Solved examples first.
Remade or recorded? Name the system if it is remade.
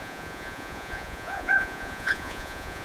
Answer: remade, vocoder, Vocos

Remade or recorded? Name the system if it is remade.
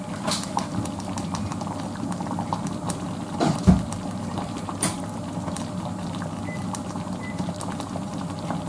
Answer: remade, vocoder, BigVGAN v2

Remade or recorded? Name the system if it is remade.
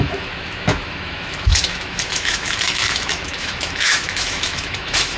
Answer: remade, autoencoder, DAC-VAE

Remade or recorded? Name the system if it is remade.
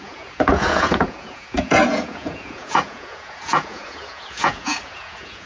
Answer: remade, vocoder, Vocos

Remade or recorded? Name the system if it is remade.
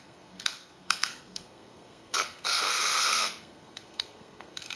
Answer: remade, codec, SNAC